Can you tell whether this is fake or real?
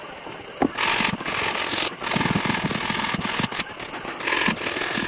real